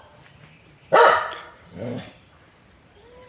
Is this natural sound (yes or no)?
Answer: no